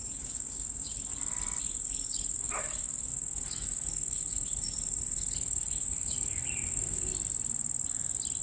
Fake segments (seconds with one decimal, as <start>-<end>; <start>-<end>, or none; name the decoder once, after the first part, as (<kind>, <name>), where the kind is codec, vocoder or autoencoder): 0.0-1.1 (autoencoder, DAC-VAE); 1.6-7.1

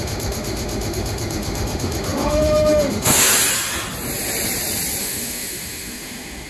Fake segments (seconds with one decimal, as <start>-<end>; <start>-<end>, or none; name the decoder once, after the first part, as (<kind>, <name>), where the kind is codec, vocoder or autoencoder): 0.0-3.3 (autoencoder, DAC-VAE); 5.0-6.5

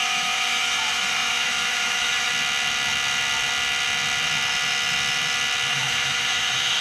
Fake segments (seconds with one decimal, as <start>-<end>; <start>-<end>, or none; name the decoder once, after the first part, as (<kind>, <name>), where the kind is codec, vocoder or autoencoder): 0.0-2.3 (autoencoder, DAC-VAE); 5.7-6.8

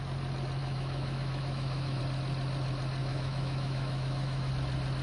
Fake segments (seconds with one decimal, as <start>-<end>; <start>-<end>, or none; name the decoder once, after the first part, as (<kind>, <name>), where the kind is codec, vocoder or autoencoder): 0.6-2.0 (autoencoder, DAC-VAE); 3.0-4.5